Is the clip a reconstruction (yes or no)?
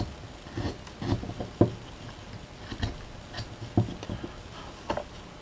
no